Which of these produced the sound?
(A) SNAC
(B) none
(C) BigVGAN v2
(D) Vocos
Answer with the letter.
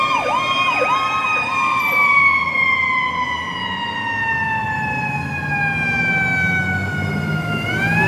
B